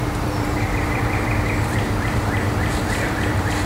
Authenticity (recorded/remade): remade